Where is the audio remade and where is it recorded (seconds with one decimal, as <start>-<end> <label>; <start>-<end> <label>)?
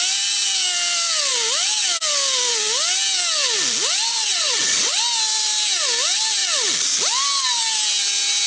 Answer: 0.0-4.1 recorded; 4.1-5.0 remade; 5.0-8.5 recorded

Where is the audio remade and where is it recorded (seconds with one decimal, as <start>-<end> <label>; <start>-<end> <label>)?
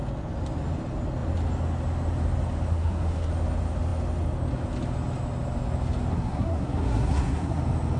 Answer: 0.0-2.7 recorded; 2.7-3.3 remade; 3.3-6.1 recorded; 6.1-7.6 remade; 7.6-8.0 recorded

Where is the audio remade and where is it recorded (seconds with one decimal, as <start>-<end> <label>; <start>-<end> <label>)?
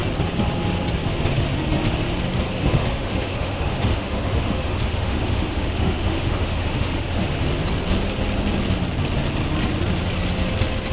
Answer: 0.0-2.6 recorded; 2.6-7.4 remade; 7.4-10.9 recorded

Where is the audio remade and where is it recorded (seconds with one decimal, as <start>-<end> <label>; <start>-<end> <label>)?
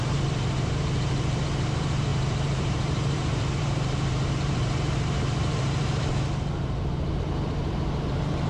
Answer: 0.0-8.5 remade